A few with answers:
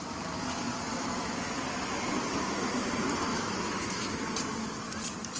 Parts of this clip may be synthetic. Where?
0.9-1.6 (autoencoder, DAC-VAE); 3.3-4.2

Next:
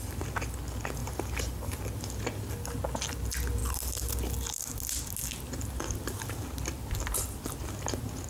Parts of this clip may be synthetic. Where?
1.0-1.8 (vocoder, BigVGAN v2)

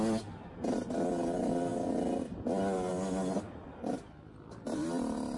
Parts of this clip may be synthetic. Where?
none

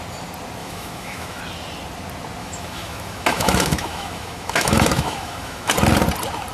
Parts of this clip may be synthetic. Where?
0.6-1.4 (autoencoder, DAC-VAE); 2.4-5.7